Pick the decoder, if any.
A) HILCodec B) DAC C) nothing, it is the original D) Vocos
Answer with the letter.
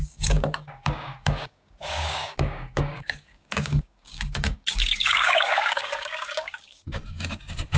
B